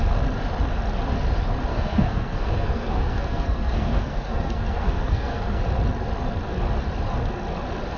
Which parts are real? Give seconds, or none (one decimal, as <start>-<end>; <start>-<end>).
0.0-1.7; 5.6-8.0